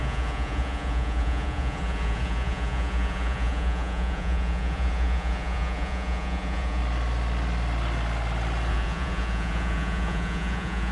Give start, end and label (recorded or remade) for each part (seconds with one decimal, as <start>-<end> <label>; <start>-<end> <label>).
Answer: 0.0-6.8 remade; 6.8-8.7 recorded; 8.7-10.9 remade